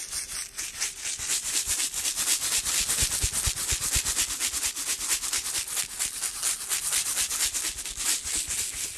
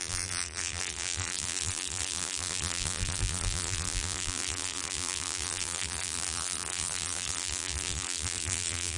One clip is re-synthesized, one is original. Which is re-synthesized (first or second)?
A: second